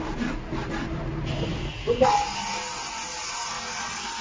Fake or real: real